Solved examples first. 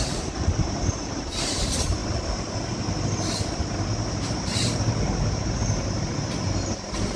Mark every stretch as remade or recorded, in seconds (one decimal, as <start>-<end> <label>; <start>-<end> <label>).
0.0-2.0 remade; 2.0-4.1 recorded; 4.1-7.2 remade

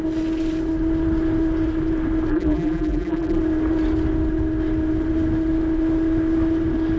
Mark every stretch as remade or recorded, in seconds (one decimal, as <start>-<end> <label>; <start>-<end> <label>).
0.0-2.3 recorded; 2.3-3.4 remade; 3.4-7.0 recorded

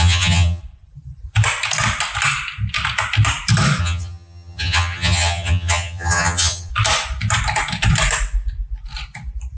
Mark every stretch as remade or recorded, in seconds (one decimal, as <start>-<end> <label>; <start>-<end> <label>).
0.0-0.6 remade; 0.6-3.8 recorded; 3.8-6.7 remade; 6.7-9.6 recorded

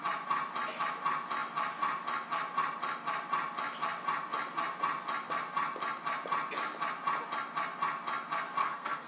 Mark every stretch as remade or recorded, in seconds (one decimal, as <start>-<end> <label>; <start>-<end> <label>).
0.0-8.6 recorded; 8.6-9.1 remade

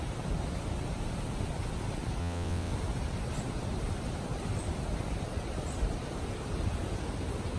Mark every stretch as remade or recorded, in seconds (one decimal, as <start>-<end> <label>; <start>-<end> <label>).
0.0-2.2 recorded; 2.2-2.7 remade; 2.7-7.6 recorded

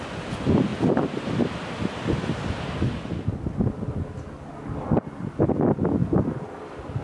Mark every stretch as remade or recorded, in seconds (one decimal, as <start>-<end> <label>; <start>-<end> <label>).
0.0-7.0 recorded

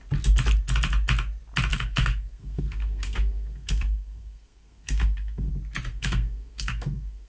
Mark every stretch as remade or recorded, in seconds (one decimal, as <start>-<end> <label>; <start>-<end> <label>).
0.0-1.7 recorded; 1.7-5.5 remade; 5.5-5.9 recorded; 5.9-7.3 remade